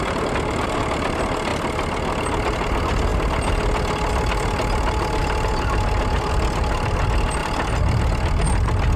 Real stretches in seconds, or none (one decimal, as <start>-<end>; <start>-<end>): 0.0-9.0